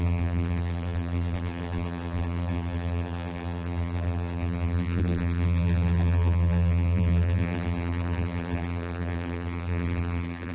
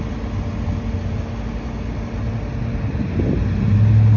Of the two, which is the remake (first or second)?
first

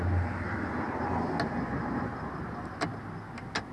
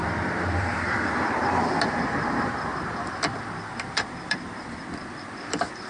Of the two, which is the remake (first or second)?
second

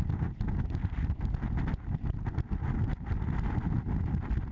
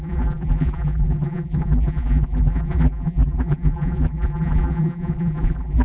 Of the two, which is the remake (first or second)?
second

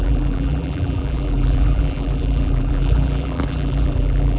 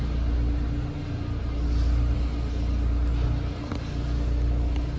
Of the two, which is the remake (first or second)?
first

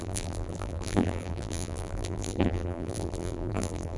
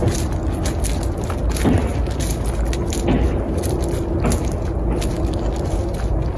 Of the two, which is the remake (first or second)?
first